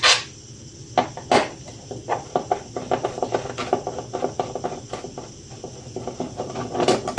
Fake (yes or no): no